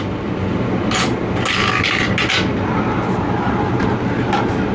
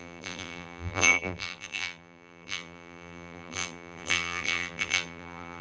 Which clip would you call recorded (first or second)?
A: first